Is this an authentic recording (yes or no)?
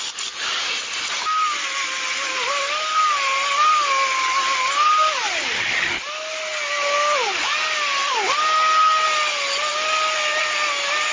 yes